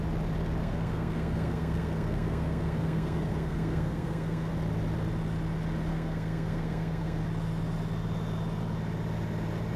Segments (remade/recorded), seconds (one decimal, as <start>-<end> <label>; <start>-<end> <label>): 0.0-0.6 recorded; 0.6-4.5 remade; 4.5-5.9 recorded; 5.9-7.2 remade; 7.2-9.8 recorded